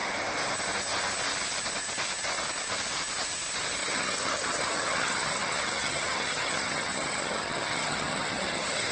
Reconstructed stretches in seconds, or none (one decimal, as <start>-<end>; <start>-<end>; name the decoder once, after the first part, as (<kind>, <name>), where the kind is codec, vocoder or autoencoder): 3.8-8.9 (vocoder, HiFi-GAN)